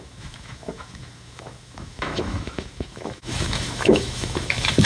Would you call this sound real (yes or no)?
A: no